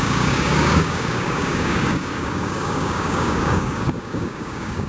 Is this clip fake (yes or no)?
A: yes